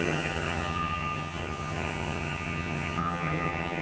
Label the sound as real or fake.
fake